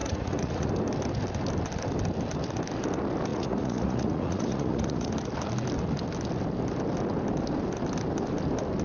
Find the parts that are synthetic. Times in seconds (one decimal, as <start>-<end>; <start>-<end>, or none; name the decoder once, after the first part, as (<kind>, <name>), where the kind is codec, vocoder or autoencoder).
0.0-0.7 (vocoder, Vocos); 3.3-5.1